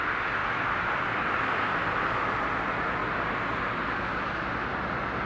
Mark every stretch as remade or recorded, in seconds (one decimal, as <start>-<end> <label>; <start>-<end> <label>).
0.0-5.3 recorded